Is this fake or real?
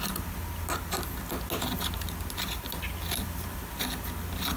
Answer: real